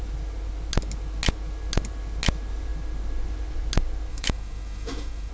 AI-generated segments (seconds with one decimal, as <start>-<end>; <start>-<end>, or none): 4.1-5.3